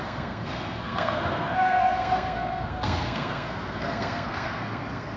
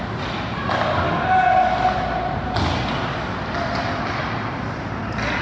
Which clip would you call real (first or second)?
second